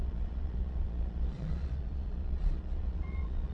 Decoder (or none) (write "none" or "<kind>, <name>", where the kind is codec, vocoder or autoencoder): vocoder, Vocos